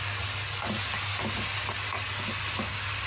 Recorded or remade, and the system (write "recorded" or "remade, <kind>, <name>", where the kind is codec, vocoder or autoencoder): recorded